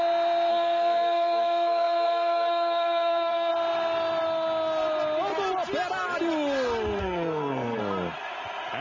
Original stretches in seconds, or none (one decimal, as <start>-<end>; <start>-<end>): 0.0-0.5; 3.5-7.0; 7.8-8.8